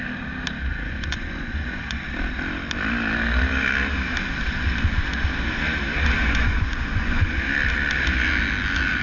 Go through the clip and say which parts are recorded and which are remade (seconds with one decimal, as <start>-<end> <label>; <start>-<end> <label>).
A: 0.0-0.7 recorded; 0.7-2.0 remade; 2.0-6.2 recorded; 6.2-7.4 remade; 7.4-9.0 recorded